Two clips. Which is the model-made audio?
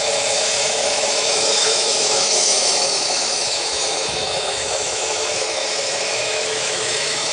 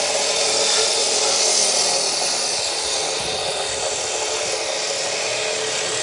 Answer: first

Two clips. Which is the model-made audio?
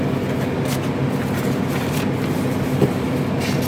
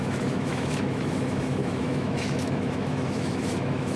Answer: second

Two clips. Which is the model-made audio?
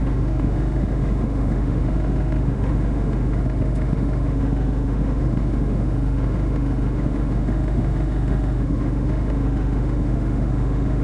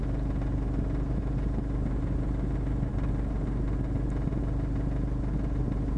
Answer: first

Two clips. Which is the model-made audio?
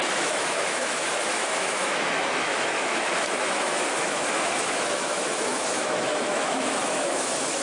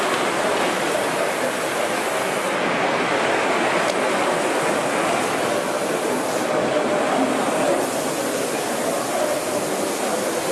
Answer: first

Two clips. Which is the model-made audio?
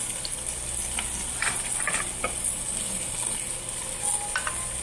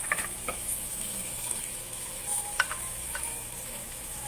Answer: second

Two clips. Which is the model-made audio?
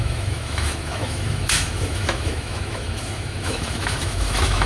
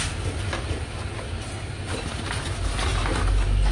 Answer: first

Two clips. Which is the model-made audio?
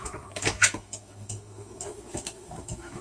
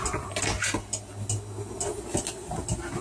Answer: first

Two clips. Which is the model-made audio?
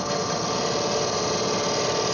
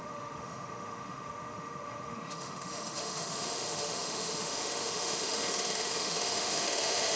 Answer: second